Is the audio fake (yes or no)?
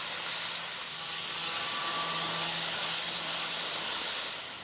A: no